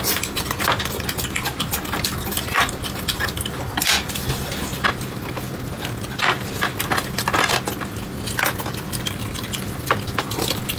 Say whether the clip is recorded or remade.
recorded